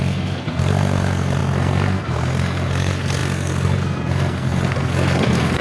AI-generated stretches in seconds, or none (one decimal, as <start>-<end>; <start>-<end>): 0.0-5.6